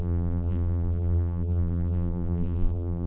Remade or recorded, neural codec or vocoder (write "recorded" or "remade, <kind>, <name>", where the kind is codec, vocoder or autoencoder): remade, vocoder, BigVGAN v2